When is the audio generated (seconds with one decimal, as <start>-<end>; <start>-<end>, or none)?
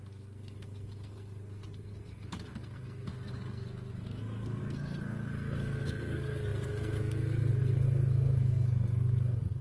0.0-9.6